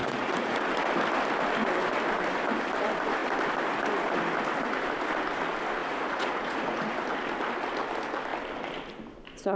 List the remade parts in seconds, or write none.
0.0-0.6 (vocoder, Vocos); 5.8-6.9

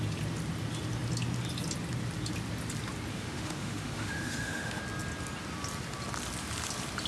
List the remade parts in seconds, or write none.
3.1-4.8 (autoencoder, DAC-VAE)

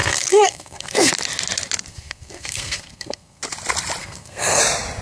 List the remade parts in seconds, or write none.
0.0-1.1 (codec, SNAC); 1.9-3.4; 4.0-4.6